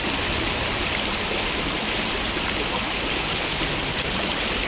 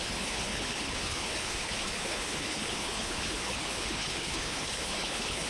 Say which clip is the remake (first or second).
second